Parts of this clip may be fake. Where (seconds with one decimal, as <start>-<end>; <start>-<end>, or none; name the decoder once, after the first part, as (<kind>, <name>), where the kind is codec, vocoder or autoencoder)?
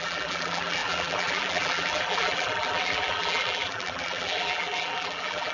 0.0-5.5 (vocoder, BigVGAN v2)